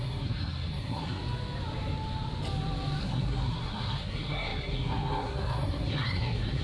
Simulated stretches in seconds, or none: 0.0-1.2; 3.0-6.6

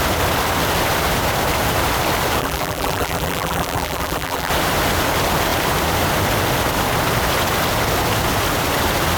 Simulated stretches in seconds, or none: 2.4-4.5